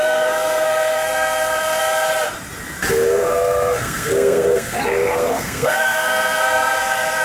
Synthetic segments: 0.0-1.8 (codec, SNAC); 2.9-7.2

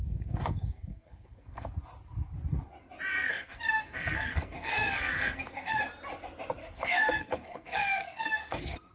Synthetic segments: 0.0-1.7 (codec, SNAC); 3.1-5.8; 6.6-8.9